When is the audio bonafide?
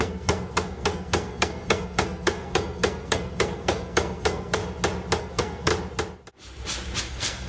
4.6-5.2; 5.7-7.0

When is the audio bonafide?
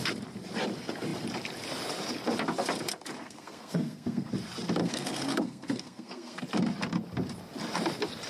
0.0-3.2; 4.3-4.8; 6.4-8.3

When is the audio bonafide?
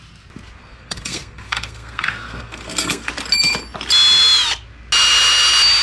0.0-0.6; 3.1-5.8